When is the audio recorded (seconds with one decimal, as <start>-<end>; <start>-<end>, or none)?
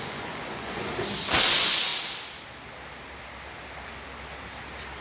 0.9-1.5; 1.9-5.0